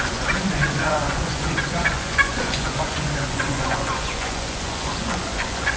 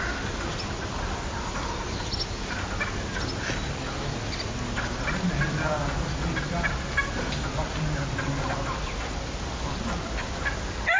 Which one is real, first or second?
second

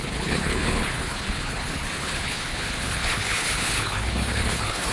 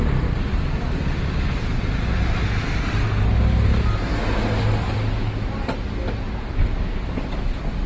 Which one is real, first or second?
second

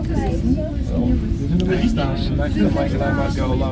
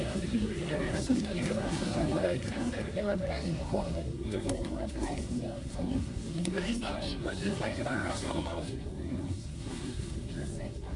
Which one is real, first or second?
first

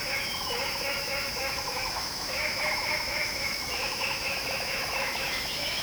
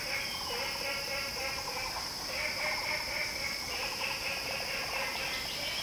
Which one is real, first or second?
second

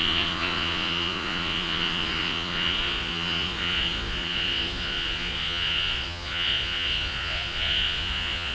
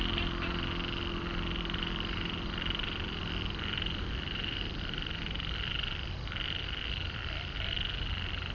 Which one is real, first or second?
second